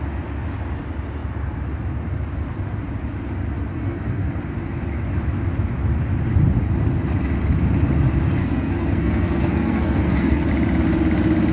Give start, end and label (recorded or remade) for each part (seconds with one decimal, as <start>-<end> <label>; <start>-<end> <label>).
0.0-3.7 recorded; 3.7-4.4 remade; 4.4-8.4 recorded; 8.4-10.5 remade; 10.5-11.5 recorded